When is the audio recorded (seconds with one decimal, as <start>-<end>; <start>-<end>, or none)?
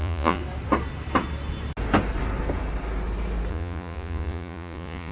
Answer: 0.4-3.5